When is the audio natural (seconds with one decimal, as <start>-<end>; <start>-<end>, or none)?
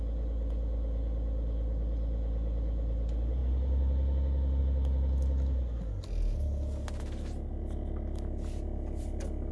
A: 0.0-9.5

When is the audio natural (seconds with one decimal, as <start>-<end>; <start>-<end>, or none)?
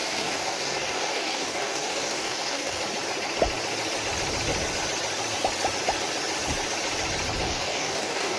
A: 2.8-7.4